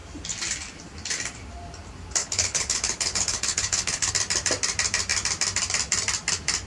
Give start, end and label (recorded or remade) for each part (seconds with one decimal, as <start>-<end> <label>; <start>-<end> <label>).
0.0-2.2 recorded; 2.2-4.1 remade; 4.1-6.7 recorded